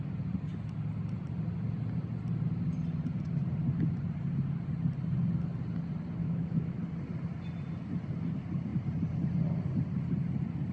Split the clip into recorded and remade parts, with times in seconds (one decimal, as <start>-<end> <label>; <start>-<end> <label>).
0.0-6.2 recorded; 6.2-6.8 remade; 6.8-10.7 recorded